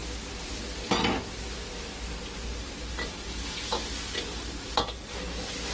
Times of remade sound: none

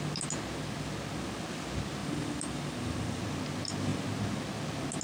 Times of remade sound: 2.0-3.2 (vocoder, BigVGAN v2)

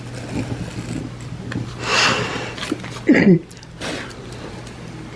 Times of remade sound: none

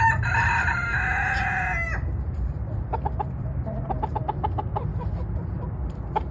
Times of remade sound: 0.0-0.8 (vocoder, BigVGAN v2); 2.1-4.9

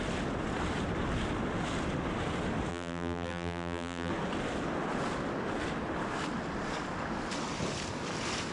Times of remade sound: 2.7-4.1 (vocoder, BigVGAN v2)

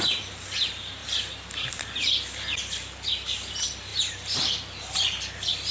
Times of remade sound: 2.5-3.5 (vocoder, BigVGAN v2); 3.9-4.8

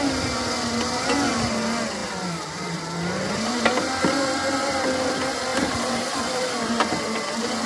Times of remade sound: 2.0-3.6 (vocoder, BigVGAN v2); 5.5-6.5

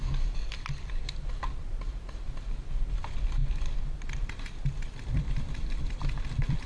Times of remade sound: 0.0-1.9 (vocoder, BigVGAN v2); 2.9-6.7